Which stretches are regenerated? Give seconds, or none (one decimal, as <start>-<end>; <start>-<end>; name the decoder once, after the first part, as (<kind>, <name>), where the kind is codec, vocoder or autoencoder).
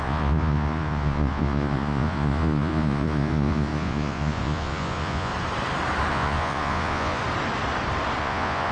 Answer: 0.0-5.3 (vocoder, Vocos); 6.1-7.2; 8.2-8.7